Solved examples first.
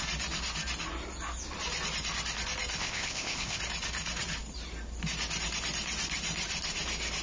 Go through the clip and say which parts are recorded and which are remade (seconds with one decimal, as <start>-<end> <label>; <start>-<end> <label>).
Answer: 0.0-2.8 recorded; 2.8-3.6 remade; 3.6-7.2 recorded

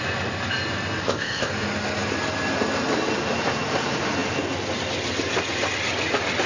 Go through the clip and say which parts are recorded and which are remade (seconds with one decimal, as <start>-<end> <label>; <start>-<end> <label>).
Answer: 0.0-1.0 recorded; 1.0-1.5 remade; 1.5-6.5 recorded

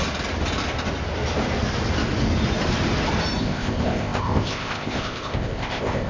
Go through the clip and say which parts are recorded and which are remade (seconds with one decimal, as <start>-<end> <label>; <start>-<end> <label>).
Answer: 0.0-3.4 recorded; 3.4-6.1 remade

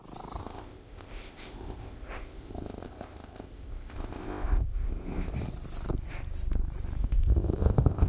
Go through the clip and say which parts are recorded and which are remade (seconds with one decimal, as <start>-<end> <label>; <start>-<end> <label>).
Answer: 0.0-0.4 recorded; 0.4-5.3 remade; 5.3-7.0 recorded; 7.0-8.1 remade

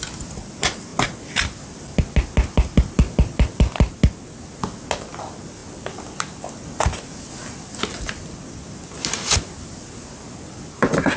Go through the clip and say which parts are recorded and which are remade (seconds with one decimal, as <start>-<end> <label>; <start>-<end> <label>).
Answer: 0.0-11.2 recorded

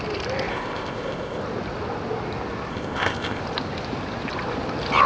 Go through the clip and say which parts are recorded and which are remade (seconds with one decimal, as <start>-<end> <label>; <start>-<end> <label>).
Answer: 0.0-0.5 recorded; 0.5-1.4 remade; 1.4-2.7 recorded; 2.7-3.4 remade; 3.4-5.1 recorded